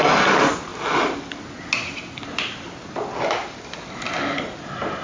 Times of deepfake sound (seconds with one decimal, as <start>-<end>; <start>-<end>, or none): none